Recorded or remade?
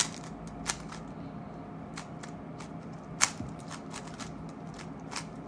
recorded